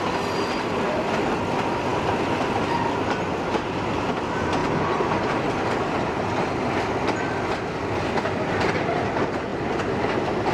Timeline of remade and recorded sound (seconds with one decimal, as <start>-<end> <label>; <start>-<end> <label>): 0.0-10.5 recorded